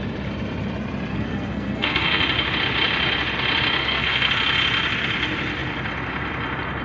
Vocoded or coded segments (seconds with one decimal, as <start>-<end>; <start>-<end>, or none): 1.1-2.2; 3.8-4.3

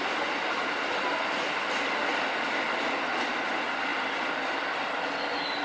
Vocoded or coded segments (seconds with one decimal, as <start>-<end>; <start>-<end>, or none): none

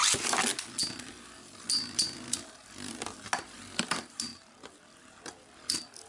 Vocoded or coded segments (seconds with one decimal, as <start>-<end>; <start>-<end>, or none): none